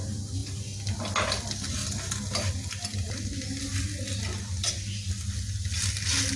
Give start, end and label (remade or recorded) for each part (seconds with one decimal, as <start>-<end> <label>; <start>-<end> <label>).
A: 0.0-6.4 recorded